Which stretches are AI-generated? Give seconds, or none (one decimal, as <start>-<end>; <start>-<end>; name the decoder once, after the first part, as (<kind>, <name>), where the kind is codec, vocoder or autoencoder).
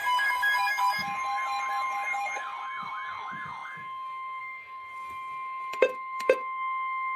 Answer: 0.0-7.2 (codec, DAC)